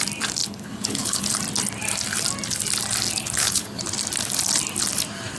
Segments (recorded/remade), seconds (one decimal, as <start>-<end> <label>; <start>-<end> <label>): 0.0-0.4 recorded; 0.4-1.3 remade; 1.3-3.2 recorded; 3.2-3.8 remade; 3.8-5.4 recorded